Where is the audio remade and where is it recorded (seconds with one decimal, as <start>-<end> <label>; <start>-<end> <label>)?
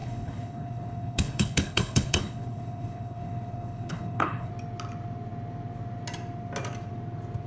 0.0-4.5 remade; 4.5-7.5 recorded